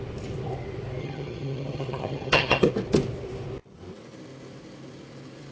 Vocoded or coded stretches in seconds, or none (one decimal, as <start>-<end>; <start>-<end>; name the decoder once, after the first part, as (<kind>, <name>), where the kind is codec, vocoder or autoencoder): 1.0-2.7 (vocoder, HiFi-GAN)